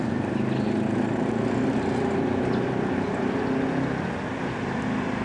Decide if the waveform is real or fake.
real